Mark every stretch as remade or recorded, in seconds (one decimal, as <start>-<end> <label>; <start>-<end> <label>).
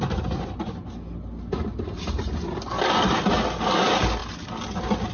0.0-5.1 recorded